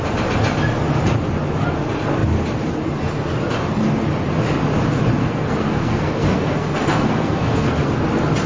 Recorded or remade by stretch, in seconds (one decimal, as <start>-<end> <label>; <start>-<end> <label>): 0.0-5.2 recorded; 5.2-7.9 remade; 7.9-8.5 recorded